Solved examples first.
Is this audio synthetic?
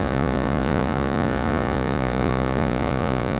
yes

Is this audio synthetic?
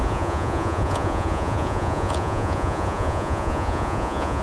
yes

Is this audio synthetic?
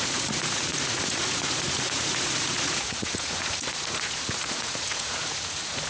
yes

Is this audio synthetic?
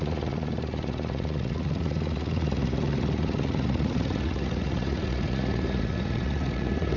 yes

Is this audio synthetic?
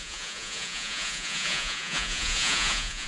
yes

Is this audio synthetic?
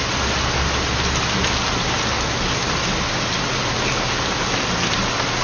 no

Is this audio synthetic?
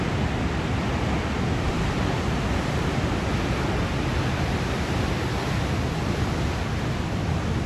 no